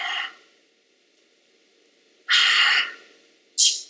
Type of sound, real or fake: real